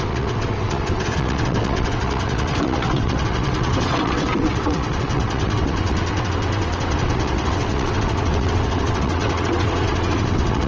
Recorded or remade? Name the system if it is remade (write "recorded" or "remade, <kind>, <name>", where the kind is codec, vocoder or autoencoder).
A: remade, vocoder, WaveNeXt